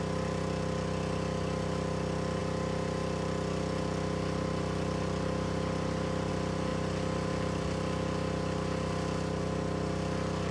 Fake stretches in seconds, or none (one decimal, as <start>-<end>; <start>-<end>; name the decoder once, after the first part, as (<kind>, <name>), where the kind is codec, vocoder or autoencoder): none